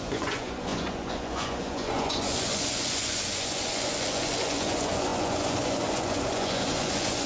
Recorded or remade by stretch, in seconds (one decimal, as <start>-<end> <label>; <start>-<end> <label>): 0.0-7.3 remade